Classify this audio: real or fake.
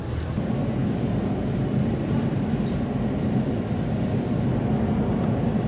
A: real